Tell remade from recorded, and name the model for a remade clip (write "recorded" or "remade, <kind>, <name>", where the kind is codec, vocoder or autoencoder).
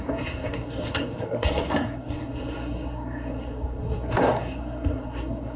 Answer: remade, codec, SNAC